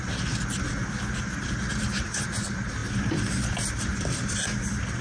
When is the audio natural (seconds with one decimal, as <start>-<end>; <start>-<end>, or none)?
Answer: 0.0-5.0

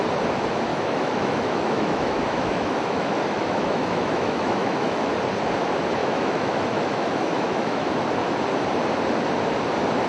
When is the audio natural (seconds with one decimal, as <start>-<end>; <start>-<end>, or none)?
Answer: 0.0-0.7; 5.1-6.0; 7.9-10.1

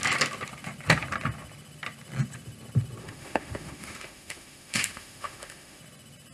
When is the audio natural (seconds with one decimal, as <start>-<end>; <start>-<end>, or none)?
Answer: 0.0-3.0; 5.8-6.3

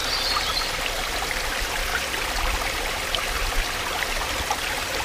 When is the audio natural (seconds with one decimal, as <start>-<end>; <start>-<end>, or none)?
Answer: 0.0-5.0